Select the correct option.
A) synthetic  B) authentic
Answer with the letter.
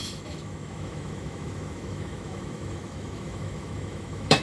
A